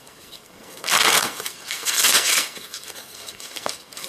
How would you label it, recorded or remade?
remade